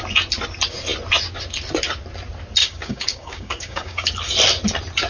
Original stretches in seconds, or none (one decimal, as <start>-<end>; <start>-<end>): 0.0-2.6; 4.1-5.1